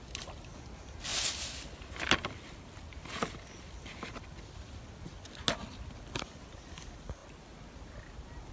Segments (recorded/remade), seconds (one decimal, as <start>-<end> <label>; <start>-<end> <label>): 0.0-8.5 recorded